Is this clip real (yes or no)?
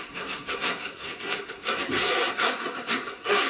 no